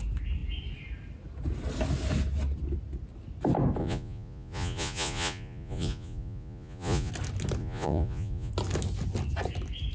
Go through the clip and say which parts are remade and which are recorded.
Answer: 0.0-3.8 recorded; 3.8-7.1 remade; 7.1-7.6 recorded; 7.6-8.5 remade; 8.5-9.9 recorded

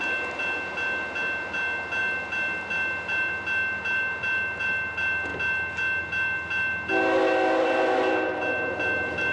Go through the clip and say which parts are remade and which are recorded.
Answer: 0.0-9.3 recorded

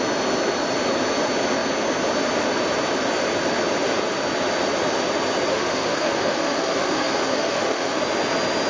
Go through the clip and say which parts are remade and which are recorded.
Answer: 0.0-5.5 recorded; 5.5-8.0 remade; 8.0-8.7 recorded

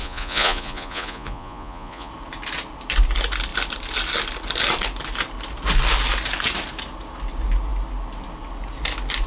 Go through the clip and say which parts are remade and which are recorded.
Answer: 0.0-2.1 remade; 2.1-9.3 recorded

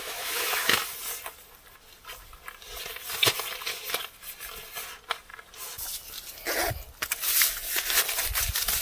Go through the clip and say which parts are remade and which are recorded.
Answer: 0.0-0.8 remade; 0.8-8.8 recorded